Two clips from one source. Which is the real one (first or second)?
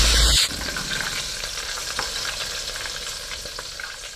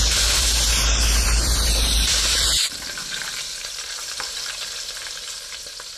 first